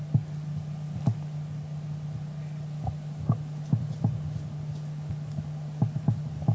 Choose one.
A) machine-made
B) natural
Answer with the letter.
B